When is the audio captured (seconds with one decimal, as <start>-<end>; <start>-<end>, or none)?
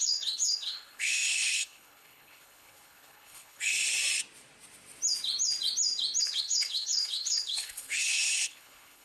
3.7-6.2